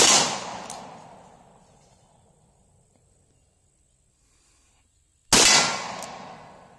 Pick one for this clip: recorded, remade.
recorded